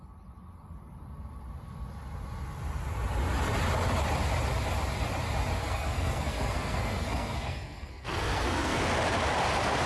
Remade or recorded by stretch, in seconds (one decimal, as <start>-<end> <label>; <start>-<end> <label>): 0.0-5.6 recorded; 5.6-8.8 remade; 8.8-9.9 recorded